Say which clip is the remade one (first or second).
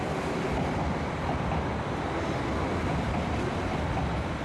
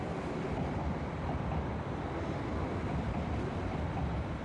second